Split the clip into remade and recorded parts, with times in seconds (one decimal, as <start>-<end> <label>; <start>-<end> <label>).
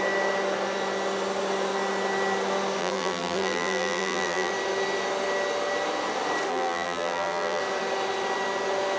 0.0-2.8 recorded; 2.8-4.5 remade; 4.5-6.5 recorded; 6.5-7.6 remade; 7.6-9.0 recorded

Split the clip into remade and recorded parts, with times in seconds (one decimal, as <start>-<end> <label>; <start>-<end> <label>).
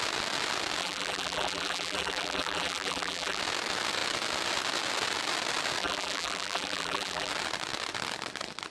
0.0-0.8 recorded; 0.8-3.4 remade; 3.4-5.8 recorded; 5.8-7.3 remade; 7.3-8.7 recorded